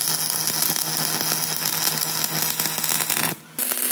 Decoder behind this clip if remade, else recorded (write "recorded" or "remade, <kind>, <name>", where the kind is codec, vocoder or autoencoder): recorded